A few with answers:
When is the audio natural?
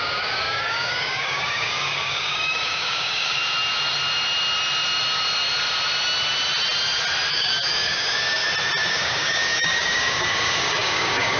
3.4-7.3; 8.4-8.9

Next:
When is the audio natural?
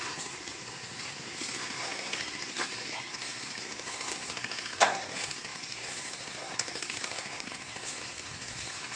none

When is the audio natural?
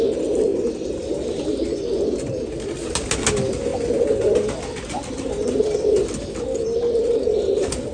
0.0-0.5; 2.5-7.9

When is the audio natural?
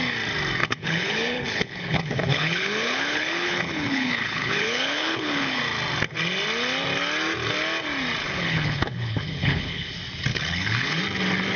0.0-0.6; 5.6-8.2; 9.9-10.3; 11.0-11.6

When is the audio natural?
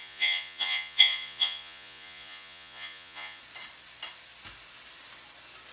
3.4-5.7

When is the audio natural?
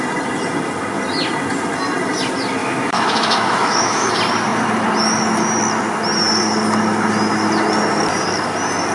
0.0-2.6; 4.1-8.9